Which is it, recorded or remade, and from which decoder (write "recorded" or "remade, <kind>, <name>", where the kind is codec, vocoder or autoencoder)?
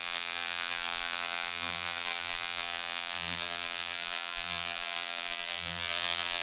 remade, vocoder, BigVGAN v2